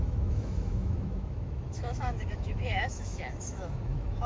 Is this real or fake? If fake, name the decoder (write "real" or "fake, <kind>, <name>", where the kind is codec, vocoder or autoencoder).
fake, autoencoder, DAC-VAE